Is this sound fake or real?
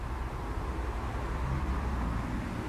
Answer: real